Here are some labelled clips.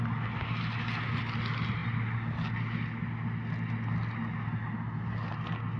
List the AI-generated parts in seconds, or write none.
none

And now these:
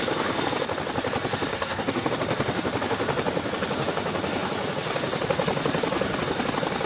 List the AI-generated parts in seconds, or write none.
1.5-2.1 (codec, SNAC)

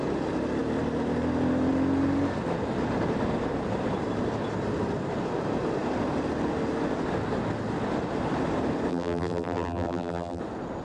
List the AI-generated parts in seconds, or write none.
8.9-10.4 (vocoder, BigVGAN v2)

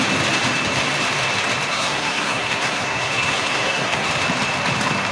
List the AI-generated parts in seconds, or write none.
1.7-4.1 (codec, SNAC)

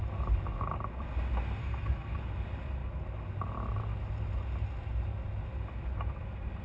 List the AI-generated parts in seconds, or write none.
1.6-2.2 (codec, SNAC)

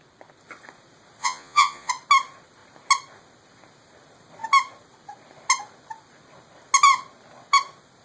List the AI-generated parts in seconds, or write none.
1.2-1.9 (vocoder, Vocos)

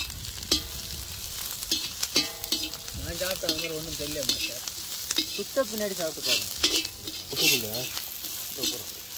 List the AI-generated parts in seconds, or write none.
none

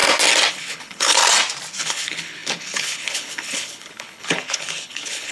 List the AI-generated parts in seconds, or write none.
0.5-1.2 (codec, HILCodec); 1.8-5.3